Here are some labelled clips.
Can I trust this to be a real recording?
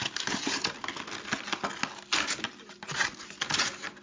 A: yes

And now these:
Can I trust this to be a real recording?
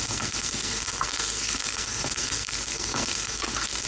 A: no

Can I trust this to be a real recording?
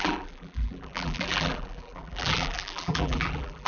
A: no